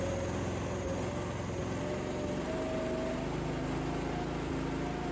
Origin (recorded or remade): recorded